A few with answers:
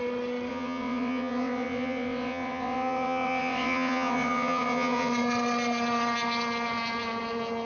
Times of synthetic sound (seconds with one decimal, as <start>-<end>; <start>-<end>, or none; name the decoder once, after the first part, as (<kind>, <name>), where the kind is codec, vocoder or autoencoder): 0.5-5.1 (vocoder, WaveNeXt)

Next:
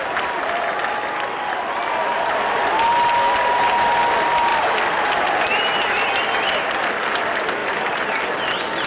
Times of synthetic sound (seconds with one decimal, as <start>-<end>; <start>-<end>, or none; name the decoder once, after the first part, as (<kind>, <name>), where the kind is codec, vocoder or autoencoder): none

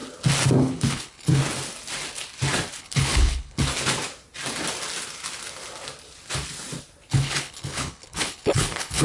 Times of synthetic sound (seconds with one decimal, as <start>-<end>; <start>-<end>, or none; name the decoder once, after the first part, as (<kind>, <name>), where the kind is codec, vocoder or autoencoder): 0.6-1.4 (codec, HILCodec); 2.8-3.7; 7.1-9.0